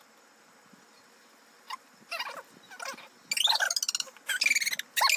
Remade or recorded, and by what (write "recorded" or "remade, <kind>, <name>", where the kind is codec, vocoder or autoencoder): recorded